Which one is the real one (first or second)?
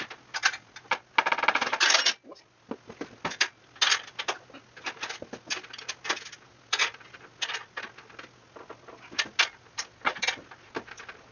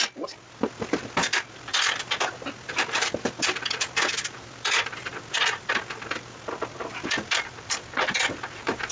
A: first